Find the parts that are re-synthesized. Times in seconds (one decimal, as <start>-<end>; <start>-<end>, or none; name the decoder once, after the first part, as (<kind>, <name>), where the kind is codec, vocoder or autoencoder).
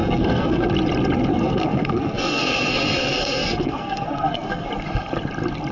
0.0-0.7 (codec, SNAC); 1.3-4.7